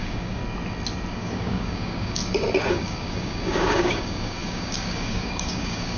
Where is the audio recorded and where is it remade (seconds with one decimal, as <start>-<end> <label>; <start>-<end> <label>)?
0.0-0.4 remade; 0.4-1.1 recorded; 1.1-2.2 remade; 2.2-2.7 recorded; 2.7-6.0 remade

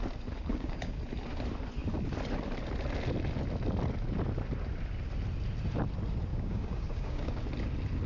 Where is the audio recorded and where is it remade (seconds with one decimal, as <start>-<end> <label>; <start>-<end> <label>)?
0.0-0.5 recorded; 0.5-1.0 remade; 1.0-6.3 recorded; 6.3-7.4 remade; 7.4-8.1 recorded

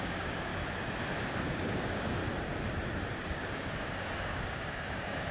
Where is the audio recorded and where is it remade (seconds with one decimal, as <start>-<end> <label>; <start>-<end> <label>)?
0.0-0.5 remade; 0.5-1.4 recorded; 1.4-2.2 remade; 2.2-3.3 recorded; 3.3-5.3 remade

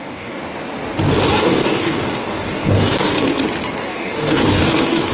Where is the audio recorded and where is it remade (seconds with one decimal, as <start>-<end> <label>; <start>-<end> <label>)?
0.0-0.4 remade; 0.4-1.3 recorded; 1.3-3.1 remade; 3.1-3.8 recorded; 3.8-5.1 remade

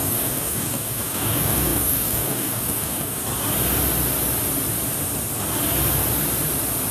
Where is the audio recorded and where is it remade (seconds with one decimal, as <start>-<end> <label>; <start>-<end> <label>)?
0.0-3.2 remade; 3.2-6.9 recorded

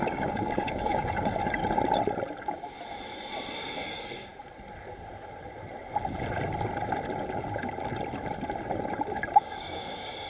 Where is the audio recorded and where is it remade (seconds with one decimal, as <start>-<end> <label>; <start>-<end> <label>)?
0.0-1.6 remade; 1.6-3.5 recorded; 3.5-4.3 remade; 4.3-9.4 recorded; 9.4-10.3 remade